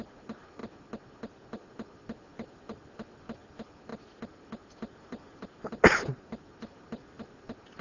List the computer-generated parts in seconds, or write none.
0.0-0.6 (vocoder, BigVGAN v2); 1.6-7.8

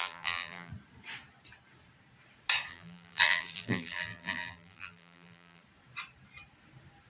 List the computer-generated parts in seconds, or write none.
0.0-0.7 (vocoder, BigVGAN v2); 2.7-5.6

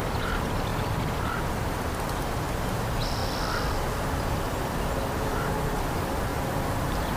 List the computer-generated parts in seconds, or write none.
0.0-0.7 (vocoder, BigVGAN v2); 2.5-3.2; 5.8-6.3

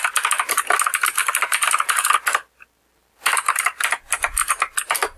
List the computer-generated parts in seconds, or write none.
1.2-2.0 (vocoder, BigVGAN v2); 3.0-3.6

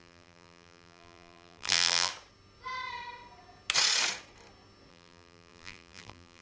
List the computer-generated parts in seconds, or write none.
0.0-2.1 (vocoder, BigVGAN v2); 4.9-6.4